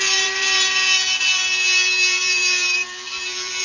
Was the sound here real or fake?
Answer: fake